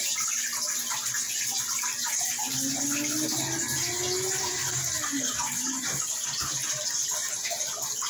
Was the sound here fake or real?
real